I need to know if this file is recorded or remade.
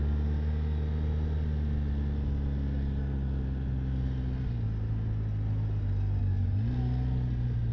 recorded